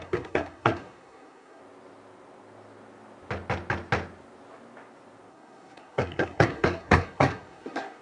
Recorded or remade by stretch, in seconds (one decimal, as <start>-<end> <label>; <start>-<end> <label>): 0.0-1.6 remade; 1.6-5.3 recorded; 5.3-8.0 remade